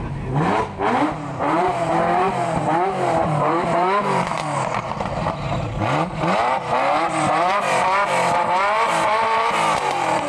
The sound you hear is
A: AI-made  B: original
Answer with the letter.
A